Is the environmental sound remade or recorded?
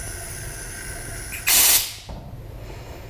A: recorded